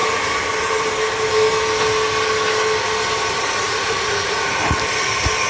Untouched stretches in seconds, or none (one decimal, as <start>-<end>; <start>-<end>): 0.0-3.3; 4.6-5.5